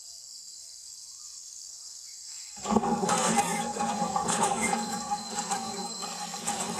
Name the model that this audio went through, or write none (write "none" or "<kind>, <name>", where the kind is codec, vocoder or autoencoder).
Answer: codec, SNAC